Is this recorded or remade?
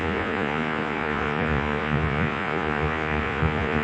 remade